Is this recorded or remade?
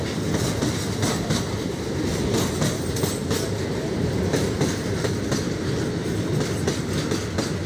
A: recorded